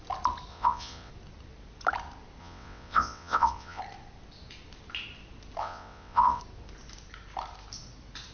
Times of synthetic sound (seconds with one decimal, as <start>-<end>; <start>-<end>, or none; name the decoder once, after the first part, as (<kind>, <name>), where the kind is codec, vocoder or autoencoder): 0.5-1.1 (vocoder, WaveNeXt); 2.4-3.8; 5.6-6.4

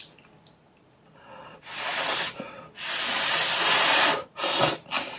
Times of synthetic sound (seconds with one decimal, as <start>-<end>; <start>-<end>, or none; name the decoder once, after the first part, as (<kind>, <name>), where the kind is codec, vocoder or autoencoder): none

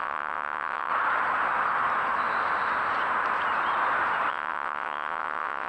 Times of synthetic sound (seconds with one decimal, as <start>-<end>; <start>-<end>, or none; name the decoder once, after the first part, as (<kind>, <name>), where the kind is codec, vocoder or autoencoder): 0.0-0.9 (vocoder, WaveNeXt); 4.3-5.7

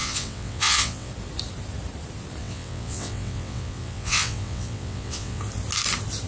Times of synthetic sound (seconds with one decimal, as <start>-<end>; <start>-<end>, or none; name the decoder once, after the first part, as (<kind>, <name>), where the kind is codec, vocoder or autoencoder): 0.0-1.1 (vocoder, WaveNeXt); 2.4-5.4

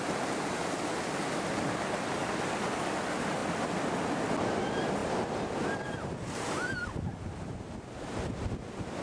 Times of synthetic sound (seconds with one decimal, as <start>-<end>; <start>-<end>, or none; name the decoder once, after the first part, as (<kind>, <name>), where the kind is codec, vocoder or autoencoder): none

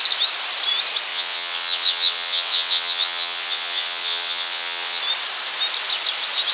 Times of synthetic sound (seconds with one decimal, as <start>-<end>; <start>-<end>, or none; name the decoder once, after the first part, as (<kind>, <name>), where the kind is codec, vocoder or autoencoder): 1.1-5.0 (vocoder, WaveNeXt)

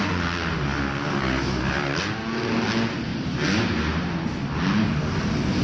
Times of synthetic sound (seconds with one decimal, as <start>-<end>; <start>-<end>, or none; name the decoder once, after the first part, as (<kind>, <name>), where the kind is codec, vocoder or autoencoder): none

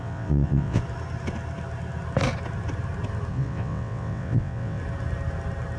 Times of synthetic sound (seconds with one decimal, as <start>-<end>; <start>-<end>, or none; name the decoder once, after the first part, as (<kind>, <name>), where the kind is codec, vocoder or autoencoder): 0.0-0.8 (vocoder, WaveNeXt); 3.3-4.8